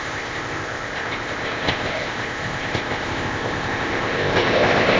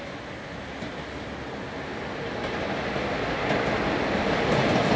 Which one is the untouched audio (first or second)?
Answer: second